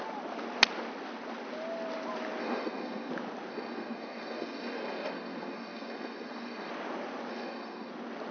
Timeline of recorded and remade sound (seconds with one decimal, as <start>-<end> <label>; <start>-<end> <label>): 0.0-2.4 recorded; 2.4-3.1 remade; 3.1-3.5 recorded; 3.5-6.7 remade; 6.7-7.3 recorded; 7.3-7.9 remade; 7.9-8.3 recorded